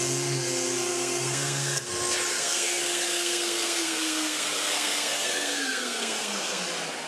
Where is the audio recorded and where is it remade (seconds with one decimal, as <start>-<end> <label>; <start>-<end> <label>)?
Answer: 0.0-0.9 recorded; 0.9-1.9 remade; 1.9-2.3 recorded; 2.3-6.6 remade; 6.6-7.1 recorded